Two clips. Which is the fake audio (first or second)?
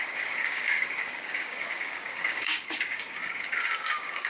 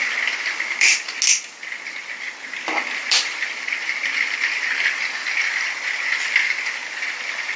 first